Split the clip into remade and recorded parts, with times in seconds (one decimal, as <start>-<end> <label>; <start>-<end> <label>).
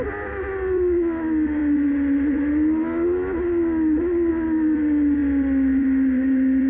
0.0-6.7 recorded